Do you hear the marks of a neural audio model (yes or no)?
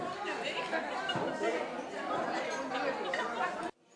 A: no